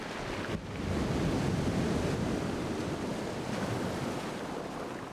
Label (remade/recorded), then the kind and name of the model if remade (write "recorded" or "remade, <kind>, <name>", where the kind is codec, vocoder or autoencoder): recorded